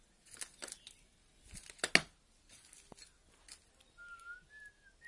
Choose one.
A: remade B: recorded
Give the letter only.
B